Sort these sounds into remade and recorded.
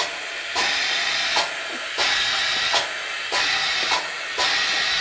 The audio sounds recorded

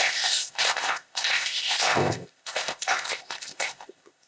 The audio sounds remade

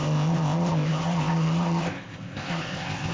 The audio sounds remade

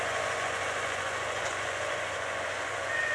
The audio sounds remade